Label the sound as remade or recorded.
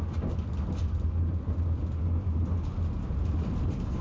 recorded